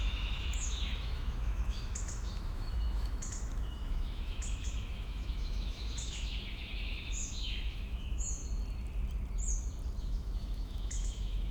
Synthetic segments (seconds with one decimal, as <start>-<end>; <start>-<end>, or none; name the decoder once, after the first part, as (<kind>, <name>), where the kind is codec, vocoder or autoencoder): 0.0-8.4 (autoencoder, DAC-VAE); 10.0-11.5